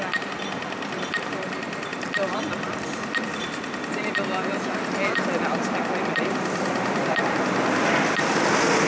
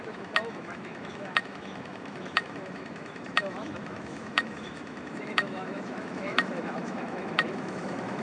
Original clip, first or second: first